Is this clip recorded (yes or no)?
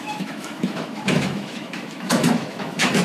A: no